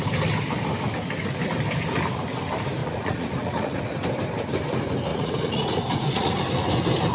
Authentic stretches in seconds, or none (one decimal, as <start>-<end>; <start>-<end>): 0.0-2.8; 3.8-5.1; 6.4-7.1